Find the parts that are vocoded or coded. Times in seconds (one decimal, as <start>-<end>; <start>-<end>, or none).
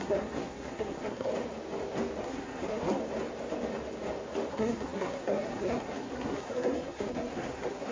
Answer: 0.0-1.3; 2.2-3.0; 4.5-7.9